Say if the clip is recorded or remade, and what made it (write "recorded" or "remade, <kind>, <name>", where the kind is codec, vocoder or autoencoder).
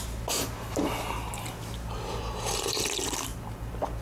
recorded